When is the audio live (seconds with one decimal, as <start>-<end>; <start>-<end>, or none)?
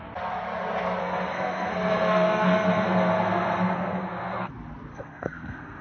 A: 0.0-1.0; 4.5-4.9